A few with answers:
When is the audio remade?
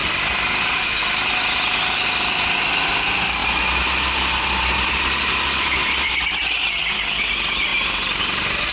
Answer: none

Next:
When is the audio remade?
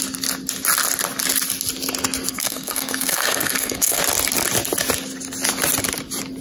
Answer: 2.3-4.0